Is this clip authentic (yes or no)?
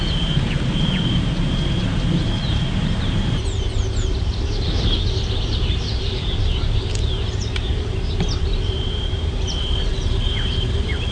no